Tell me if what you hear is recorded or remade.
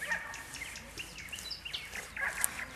recorded